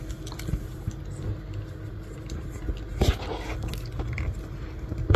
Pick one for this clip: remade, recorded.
recorded